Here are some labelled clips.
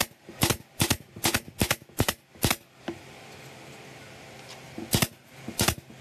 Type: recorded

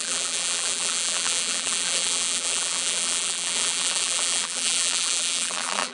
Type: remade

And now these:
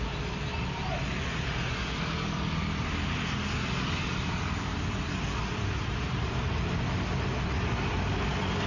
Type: recorded